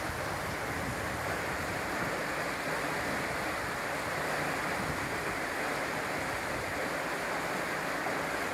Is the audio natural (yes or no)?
yes